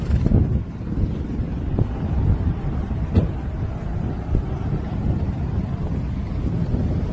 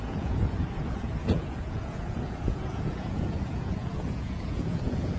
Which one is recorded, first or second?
first